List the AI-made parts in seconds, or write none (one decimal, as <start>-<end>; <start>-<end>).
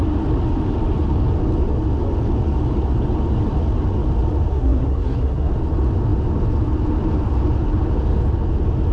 4.5-5.5